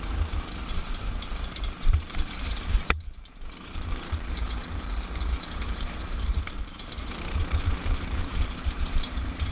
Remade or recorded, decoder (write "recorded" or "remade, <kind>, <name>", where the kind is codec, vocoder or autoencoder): remade, vocoder, BigVGAN v2